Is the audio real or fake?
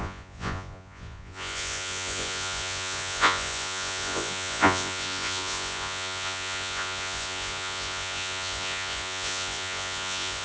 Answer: fake